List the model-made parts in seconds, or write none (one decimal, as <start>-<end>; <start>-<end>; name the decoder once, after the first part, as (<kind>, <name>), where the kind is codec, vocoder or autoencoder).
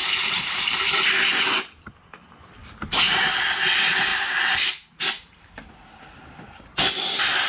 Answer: 0.0-0.8 (vocoder, BigVGAN v2); 2.6-3.5; 4.1-6.2